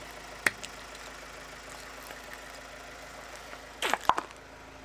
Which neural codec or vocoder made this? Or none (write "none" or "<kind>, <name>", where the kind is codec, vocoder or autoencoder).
none